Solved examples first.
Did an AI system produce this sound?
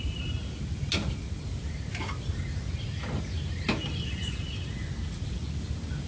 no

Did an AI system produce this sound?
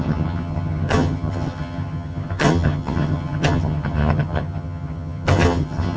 yes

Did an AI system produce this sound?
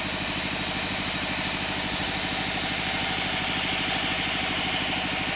no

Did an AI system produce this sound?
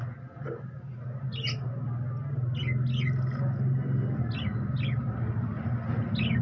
no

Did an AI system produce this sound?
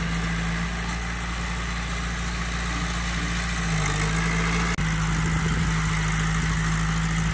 no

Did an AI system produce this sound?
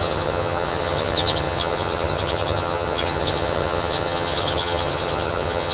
yes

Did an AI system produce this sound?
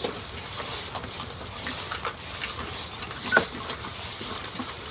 no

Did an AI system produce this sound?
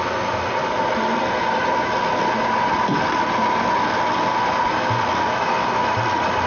no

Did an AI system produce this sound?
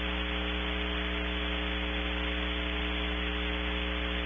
no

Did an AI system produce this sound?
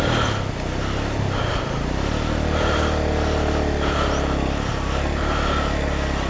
no